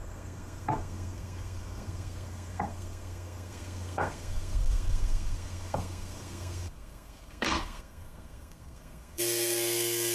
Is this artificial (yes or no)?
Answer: yes